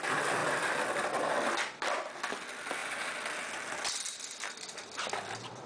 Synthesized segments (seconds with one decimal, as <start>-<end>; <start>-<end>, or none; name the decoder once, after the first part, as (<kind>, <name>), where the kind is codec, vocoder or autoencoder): 0.4-2.3 (vocoder, BigVGAN v2)